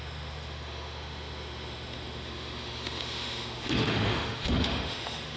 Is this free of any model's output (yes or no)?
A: no